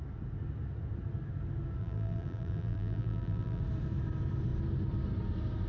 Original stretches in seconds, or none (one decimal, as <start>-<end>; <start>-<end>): 0.0-1.8; 3.6-5.7